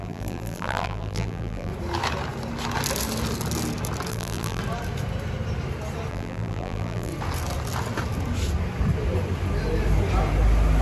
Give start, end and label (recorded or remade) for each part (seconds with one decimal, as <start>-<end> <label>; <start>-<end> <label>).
0.0-1.7 remade; 1.7-4.1 recorded; 4.1-4.6 remade; 4.6-6.1 recorded; 6.1-7.1 remade; 7.1-10.8 recorded